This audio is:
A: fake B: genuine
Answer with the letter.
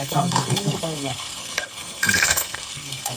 A